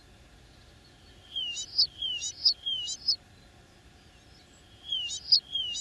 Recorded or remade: recorded